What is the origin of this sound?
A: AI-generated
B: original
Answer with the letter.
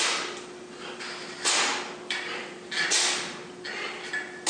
B